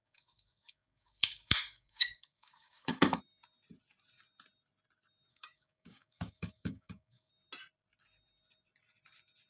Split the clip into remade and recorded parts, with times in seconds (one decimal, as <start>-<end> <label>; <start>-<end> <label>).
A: 0.0-3.2 remade; 3.2-5.3 recorded; 5.3-7.3 remade; 7.3-9.5 recorded

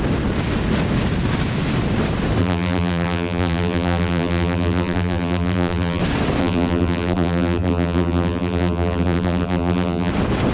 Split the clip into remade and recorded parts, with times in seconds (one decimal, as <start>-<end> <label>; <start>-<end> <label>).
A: 0.0-2.4 recorded; 2.4-6.0 remade; 6.0-6.4 recorded; 6.4-10.1 remade; 10.1-10.5 recorded

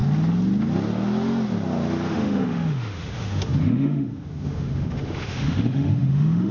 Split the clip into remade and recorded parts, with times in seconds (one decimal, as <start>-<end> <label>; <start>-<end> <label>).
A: 0.0-2.1 recorded; 2.1-6.5 remade

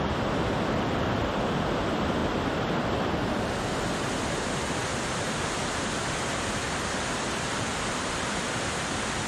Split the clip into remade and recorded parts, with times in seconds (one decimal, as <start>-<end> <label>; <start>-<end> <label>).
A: 0.0-4.8 remade; 4.8-6.5 recorded; 6.5-7.7 remade; 7.7-9.3 recorded

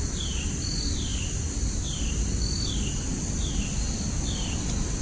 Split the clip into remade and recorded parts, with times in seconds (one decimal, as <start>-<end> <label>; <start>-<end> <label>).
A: 0.0-5.0 recorded